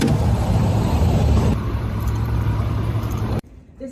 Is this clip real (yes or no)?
no